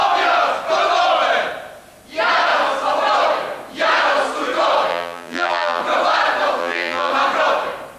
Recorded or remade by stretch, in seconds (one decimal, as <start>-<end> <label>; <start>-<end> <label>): 0.0-4.9 recorded; 4.9-5.8 remade; 5.8-6.6 recorded; 6.6-7.1 remade; 7.1-8.0 recorded

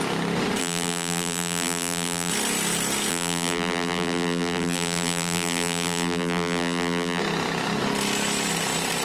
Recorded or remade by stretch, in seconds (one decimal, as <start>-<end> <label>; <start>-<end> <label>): 0.0-0.6 recorded; 0.6-2.3 remade; 2.3-3.1 recorded; 3.1-7.2 remade; 7.2-9.0 recorded